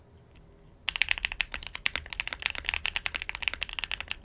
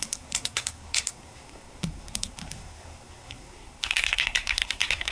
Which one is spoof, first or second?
second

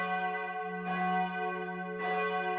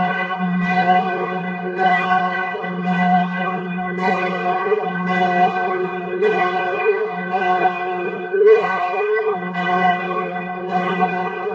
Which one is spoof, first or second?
second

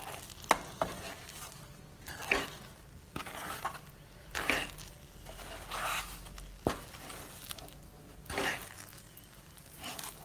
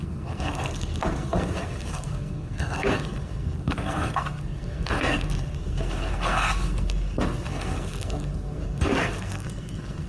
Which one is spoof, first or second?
second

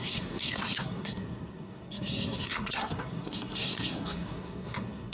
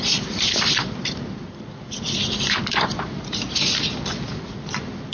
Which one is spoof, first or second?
first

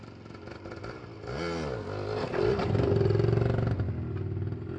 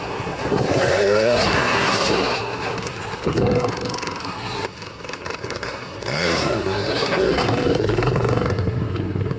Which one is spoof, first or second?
second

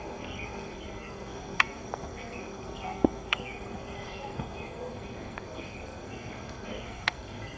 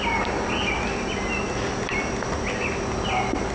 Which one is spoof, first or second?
first